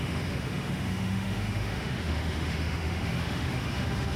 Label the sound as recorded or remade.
remade